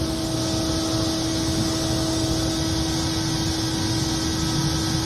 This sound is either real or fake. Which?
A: real